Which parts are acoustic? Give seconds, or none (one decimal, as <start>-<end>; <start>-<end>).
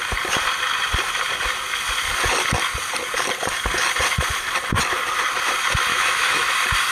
0.0-5.9; 6.5-6.9